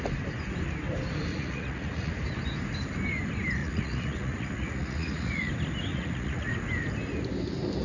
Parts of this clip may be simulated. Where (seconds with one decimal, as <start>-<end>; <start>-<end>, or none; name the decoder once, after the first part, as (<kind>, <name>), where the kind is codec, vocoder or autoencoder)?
1.3-2.1 (vocoder, Vocos); 3.6-5.5; 5.9-6.5